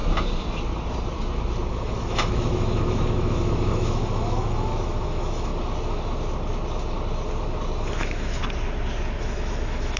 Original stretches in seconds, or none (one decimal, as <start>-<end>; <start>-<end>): 0.0-1.7; 5.5-7.8; 8.4-9.2